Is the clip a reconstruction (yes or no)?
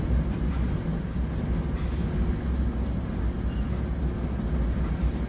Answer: no